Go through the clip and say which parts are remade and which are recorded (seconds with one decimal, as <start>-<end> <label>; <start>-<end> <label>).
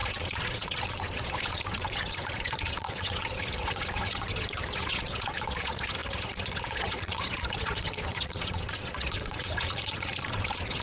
0.0-10.8 remade